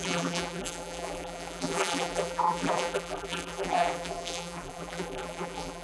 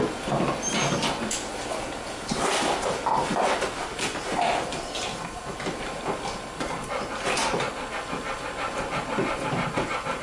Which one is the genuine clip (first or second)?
second